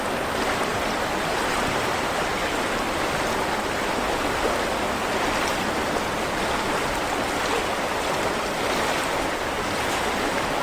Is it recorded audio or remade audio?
recorded